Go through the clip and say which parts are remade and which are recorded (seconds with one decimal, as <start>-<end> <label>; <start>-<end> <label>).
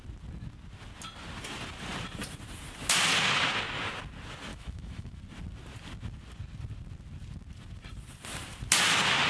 0.0-4.5 recorded; 4.5-5.2 remade; 5.2-9.3 recorded